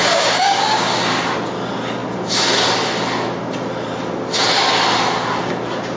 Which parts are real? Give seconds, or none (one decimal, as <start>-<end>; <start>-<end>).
1.0-6.0